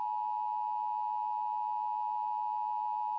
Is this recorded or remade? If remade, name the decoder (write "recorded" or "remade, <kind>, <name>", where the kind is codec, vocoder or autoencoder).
recorded